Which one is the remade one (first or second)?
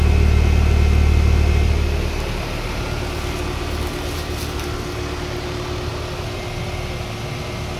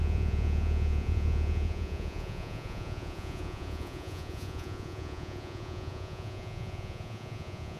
second